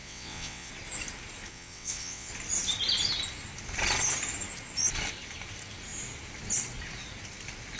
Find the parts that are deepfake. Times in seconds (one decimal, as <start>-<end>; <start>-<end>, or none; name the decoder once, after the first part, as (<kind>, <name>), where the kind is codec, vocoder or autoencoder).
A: 0.0-0.7 (vocoder, WaveNeXt); 1.5-2.3